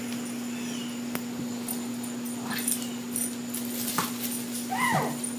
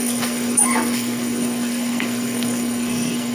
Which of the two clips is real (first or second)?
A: first